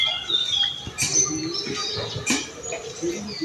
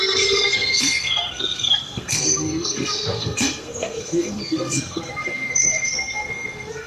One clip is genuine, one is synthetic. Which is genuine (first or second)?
first